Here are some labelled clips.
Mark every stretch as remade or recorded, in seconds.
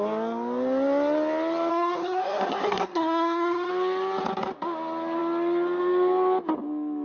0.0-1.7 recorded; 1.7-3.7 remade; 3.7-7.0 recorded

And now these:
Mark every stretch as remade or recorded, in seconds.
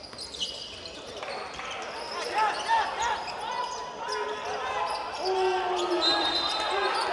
0.0-7.1 recorded